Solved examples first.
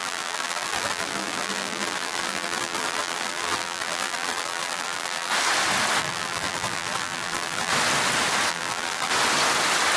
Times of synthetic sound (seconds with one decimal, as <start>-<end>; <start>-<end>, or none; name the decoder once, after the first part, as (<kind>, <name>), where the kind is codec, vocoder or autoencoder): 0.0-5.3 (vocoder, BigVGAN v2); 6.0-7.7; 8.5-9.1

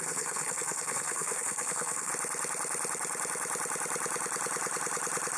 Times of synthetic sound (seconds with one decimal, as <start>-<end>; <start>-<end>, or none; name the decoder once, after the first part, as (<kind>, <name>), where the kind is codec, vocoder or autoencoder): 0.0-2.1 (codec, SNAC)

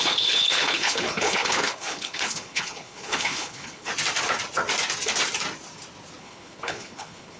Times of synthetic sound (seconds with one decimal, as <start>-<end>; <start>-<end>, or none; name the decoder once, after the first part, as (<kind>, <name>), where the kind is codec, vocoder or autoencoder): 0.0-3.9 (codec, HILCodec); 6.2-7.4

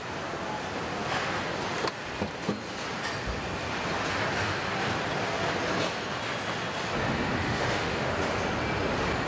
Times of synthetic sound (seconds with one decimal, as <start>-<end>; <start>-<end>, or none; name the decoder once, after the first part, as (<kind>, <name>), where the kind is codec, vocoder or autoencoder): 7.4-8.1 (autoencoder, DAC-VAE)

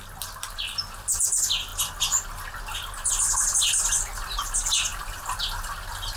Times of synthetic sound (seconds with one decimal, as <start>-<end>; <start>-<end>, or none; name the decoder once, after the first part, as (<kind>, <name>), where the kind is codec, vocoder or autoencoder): none

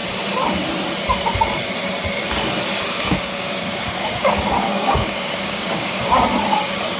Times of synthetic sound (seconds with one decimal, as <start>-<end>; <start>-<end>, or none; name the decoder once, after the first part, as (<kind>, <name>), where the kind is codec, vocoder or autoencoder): 2.7-6.0 (codec, DAC)

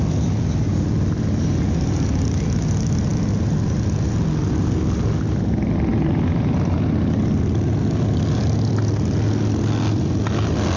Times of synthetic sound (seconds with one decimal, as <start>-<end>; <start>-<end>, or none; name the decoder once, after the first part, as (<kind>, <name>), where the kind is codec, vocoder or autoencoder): none